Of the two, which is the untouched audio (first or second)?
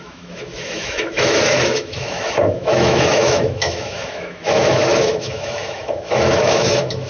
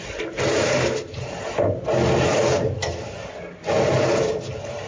second